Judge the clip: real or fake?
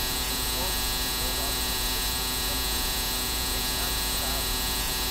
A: fake